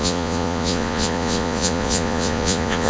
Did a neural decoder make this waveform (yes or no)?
yes